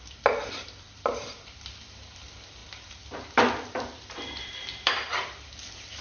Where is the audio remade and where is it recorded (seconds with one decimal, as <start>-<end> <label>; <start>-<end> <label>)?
0.0-6.0 remade